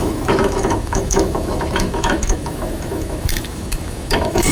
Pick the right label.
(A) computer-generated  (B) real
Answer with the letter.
A